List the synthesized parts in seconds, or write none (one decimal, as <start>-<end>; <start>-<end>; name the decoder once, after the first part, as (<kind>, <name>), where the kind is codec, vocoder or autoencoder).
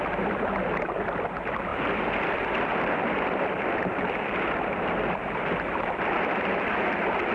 1.7-6.1 (vocoder, BigVGAN v2)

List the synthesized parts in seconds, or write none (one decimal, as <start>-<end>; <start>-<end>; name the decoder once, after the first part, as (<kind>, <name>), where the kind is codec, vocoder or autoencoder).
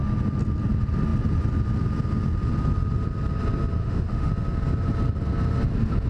3.8-4.3 (autoencoder, DAC-VAE)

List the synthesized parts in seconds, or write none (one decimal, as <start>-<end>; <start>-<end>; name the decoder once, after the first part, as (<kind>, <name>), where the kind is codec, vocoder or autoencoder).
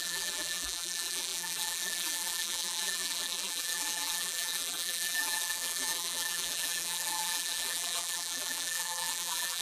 0.0-9.6 (vocoder, BigVGAN v2)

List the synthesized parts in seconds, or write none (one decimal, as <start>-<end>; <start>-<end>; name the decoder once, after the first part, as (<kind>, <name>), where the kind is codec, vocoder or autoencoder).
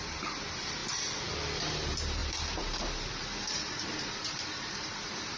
0.0-0.8 (vocoder, BigVGAN v2); 1.6-5.4